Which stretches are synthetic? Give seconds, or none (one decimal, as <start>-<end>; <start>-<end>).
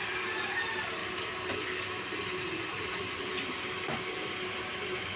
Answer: 0.0-1.0; 2.2-5.2